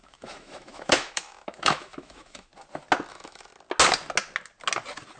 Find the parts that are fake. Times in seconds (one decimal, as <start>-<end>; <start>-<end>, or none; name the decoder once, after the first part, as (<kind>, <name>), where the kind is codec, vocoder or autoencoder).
0.0-2.5 (autoencoder, DAC-VAE); 3.1-3.5